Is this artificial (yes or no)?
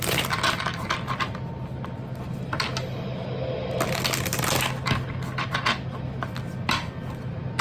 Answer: no